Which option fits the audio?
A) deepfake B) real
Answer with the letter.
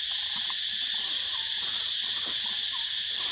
B